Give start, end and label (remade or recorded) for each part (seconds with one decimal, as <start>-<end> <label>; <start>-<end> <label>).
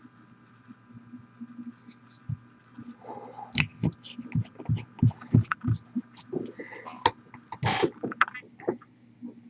0.0-9.5 recorded